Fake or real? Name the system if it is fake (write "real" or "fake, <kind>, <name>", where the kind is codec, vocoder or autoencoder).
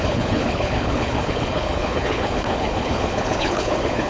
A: fake, codec, HILCodec